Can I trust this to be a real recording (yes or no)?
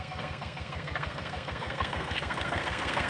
no